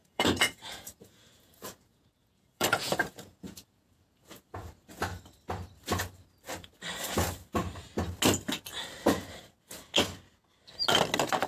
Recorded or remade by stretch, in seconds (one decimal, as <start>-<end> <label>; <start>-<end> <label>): 0.0-5.0 remade; 5.0-11.5 recorded